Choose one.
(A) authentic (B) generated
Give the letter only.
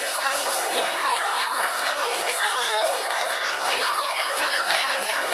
B